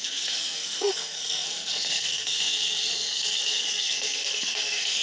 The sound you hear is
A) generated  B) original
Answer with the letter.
A